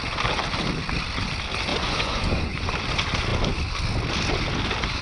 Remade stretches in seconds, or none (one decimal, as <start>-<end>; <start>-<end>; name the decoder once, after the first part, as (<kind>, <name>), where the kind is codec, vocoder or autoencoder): 1.7-2.7 (vocoder, Vocos)

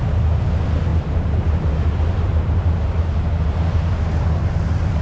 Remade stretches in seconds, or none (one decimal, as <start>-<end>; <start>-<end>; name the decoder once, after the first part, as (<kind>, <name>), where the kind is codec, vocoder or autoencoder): 0.9-3.9 (vocoder, BigVGAN v2)

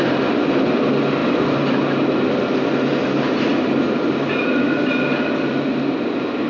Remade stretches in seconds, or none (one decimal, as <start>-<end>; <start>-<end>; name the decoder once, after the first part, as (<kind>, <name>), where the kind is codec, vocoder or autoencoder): none

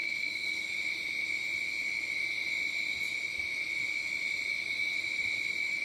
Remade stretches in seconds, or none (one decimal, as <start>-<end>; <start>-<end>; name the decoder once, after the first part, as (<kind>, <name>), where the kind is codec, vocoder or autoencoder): 0.0-0.7 (codec, SNAC)